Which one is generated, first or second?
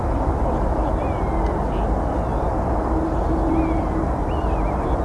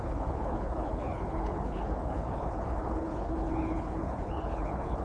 second